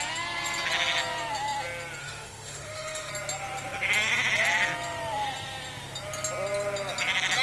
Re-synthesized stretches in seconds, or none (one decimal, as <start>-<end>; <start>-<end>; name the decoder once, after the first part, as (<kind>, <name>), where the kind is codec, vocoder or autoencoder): 2.0-3.1 (autoencoder, DAC-VAE)